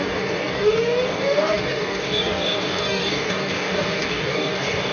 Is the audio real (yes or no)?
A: no